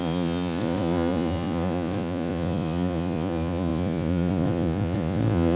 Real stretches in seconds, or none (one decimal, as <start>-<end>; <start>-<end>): none